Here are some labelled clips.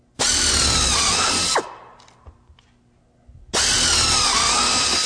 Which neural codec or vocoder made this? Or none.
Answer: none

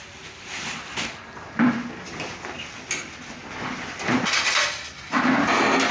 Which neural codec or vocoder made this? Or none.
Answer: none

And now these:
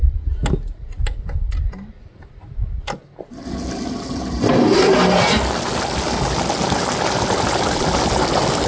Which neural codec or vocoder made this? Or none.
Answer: none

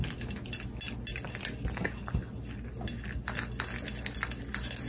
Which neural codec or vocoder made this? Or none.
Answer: none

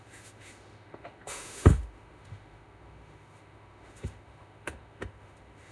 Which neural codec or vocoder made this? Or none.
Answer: autoencoder, DAC-VAE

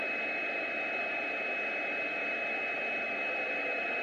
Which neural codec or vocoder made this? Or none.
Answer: none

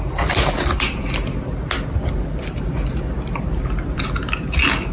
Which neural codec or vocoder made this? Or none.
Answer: none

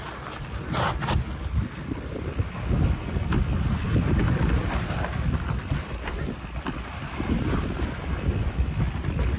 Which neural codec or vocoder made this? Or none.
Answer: none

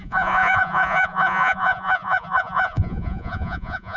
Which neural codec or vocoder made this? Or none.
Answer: vocoder, Vocos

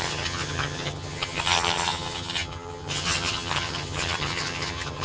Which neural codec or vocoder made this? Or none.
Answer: vocoder, HiFi-GAN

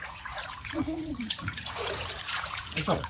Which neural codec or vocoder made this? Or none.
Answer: vocoder, Vocos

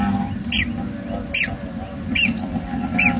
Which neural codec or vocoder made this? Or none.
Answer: none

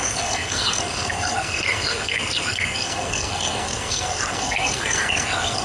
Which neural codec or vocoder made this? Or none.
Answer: codec, SNAC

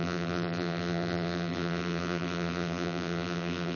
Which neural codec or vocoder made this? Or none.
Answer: vocoder, BigVGAN v2